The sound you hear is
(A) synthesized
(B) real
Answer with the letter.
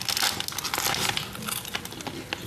B